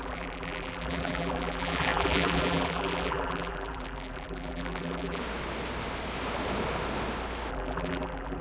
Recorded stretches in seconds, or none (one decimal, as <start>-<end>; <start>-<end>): 5.2-7.5